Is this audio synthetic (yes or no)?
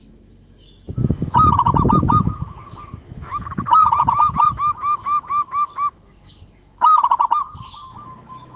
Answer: yes